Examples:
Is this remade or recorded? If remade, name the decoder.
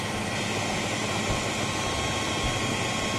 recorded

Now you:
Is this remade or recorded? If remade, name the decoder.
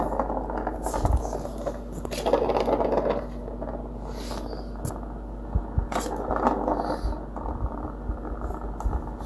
recorded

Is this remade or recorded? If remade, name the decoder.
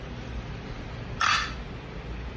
recorded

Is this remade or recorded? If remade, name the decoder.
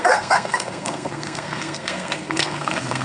remade, codec, SNAC